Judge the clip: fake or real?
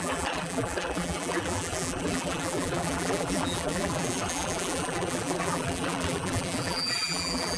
fake